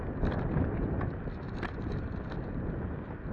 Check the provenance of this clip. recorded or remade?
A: recorded